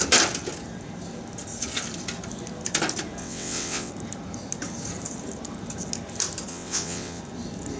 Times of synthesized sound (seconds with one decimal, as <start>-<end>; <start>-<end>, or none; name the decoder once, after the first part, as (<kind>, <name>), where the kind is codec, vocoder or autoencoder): 3.2-3.9 (vocoder, WaveNeXt); 6.5-7.2